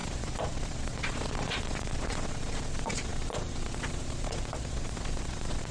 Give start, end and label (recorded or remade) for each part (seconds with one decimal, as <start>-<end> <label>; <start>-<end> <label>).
0.0-5.7 remade